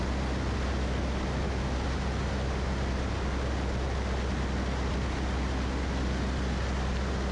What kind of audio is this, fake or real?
real